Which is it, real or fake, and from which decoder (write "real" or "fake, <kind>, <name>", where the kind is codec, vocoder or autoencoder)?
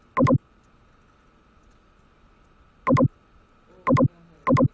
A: real